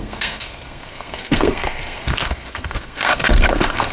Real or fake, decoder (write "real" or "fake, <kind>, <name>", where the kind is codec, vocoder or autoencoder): fake, codec, SNAC